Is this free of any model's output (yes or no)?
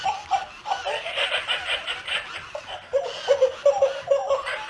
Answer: yes